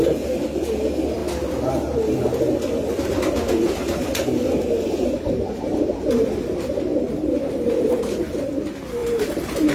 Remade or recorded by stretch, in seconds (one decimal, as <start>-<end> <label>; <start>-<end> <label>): 0.0-9.0 recorded; 9.0-9.7 remade